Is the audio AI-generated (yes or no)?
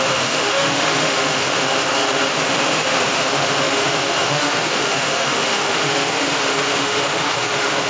yes